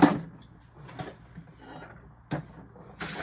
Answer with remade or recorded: recorded